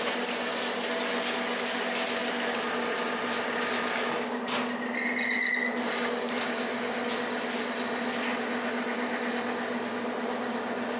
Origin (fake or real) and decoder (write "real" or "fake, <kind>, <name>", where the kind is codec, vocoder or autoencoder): real